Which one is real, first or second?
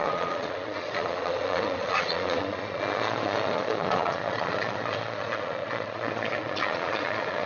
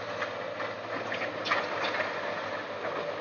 second